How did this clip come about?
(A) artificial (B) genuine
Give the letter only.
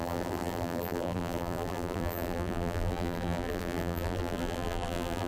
A